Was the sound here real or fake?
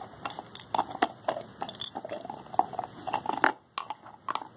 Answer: real